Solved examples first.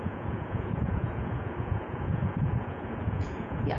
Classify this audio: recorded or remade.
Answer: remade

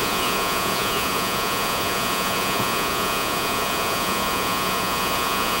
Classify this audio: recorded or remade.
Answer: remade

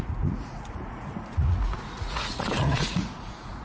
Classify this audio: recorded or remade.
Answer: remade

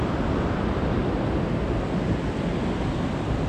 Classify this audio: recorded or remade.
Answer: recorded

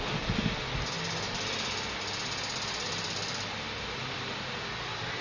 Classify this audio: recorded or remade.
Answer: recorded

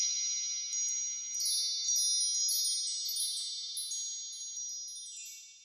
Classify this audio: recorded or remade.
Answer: recorded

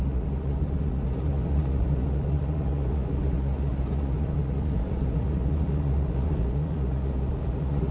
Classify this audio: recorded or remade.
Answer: remade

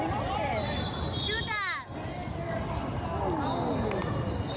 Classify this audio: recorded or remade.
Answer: recorded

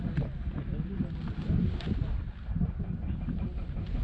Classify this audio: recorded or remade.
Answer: recorded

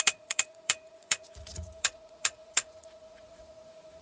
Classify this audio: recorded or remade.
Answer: remade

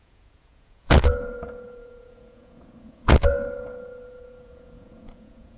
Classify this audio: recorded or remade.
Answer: remade